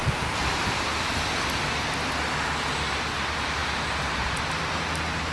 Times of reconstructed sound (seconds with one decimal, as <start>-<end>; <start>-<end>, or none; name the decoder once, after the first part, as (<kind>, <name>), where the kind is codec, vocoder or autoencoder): 0.0-0.8 (vocoder, BigVGAN v2)

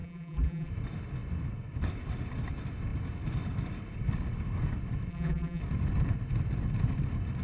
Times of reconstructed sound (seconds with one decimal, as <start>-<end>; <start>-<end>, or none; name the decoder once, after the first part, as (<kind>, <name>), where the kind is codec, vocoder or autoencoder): 0.0-0.7 (vocoder, BigVGAN v2); 5.1-5.6

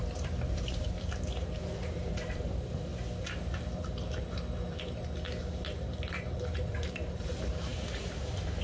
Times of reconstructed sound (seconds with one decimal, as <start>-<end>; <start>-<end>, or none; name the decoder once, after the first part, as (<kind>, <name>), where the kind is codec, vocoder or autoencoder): 0.0-2.9 (vocoder, BigVGAN v2); 5.4-8.6

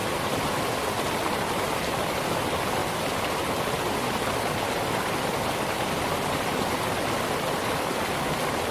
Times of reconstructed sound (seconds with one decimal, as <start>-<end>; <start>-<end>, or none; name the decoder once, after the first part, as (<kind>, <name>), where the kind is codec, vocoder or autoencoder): 2.8-3.8 (vocoder, BigVGAN v2)

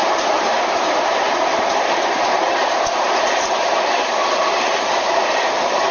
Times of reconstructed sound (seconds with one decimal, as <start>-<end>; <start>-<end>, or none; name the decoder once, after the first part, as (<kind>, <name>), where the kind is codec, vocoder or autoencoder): 0.0-5.9 (vocoder, BigVGAN v2)

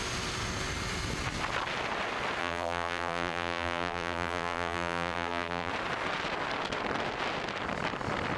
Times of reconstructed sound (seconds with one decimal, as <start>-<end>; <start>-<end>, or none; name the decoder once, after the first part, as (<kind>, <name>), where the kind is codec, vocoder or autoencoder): 2.4-5.7 (vocoder, BigVGAN v2)